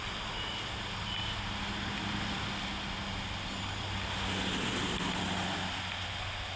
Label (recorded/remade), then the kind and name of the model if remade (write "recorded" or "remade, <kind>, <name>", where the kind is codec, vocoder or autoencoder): recorded